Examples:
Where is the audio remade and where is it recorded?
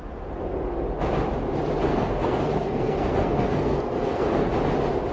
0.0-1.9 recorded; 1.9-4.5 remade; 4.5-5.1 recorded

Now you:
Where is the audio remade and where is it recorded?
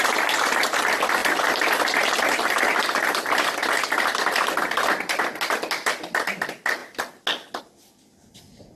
0.0-8.8 recorded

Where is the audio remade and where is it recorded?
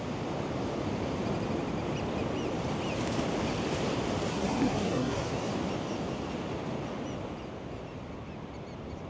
0.0-4.3 recorded; 4.3-5.5 remade; 5.5-9.1 recorded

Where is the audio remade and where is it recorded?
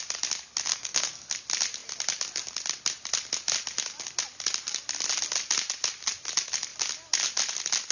0.0-0.7 recorded; 0.7-1.3 remade; 1.3-7.9 recorded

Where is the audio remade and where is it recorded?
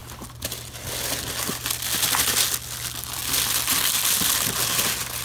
0.0-5.2 recorded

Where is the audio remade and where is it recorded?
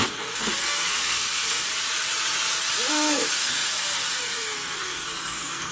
0.0-1.7 remade; 1.7-2.9 recorded; 2.9-5.7 remade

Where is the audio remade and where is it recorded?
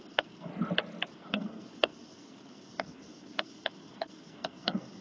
0.0-0.5 remade; 0.5-1.1 recorded; 1.1-5.0 remade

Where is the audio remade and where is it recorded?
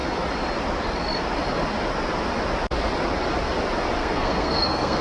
0.0-4.0 recorded; 4.0-5.0 remade